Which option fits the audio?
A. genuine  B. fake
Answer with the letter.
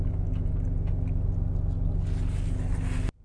A